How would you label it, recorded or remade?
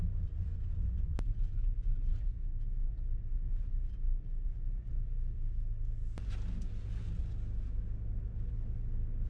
recorded